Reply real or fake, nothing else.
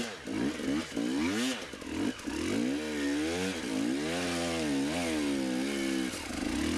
real